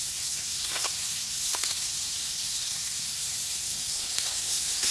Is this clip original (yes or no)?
no